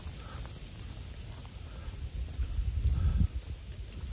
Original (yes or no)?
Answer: yes